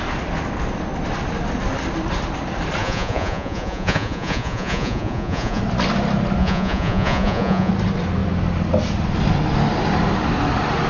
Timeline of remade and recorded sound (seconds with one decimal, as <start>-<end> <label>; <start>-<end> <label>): 0.0-2.8 recorded; 2.8-5.6 remade; 5.6-6.4 recorded; 6.4-7.7 remade; 7.7-10.9 recorded